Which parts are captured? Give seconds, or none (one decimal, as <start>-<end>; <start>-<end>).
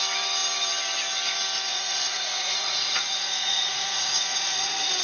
0.0-1.7